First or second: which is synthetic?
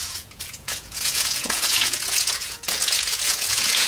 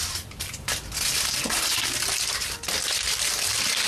first